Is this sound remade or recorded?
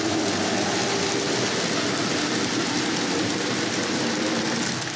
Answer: recorded